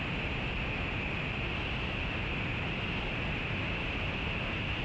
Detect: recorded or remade recorded